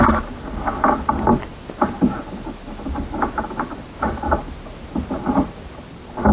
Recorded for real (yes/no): yes